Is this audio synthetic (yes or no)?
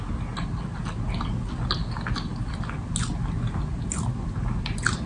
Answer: no